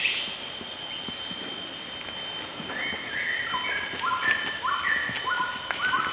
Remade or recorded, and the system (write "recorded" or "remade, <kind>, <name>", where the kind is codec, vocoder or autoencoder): recorded